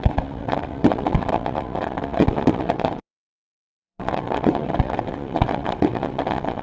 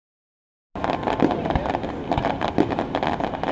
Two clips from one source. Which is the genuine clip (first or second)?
second